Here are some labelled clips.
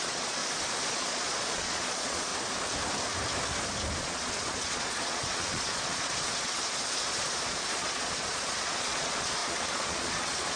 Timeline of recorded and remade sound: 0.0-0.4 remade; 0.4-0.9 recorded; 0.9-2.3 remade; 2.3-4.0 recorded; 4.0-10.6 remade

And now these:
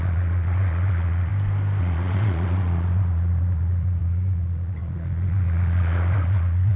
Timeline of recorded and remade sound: 0.0-1.3 remade; 1.3-1.8 recorded; 1.8-6.8 remade

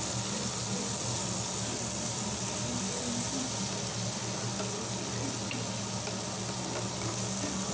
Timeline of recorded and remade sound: 0.0-7.7 recorded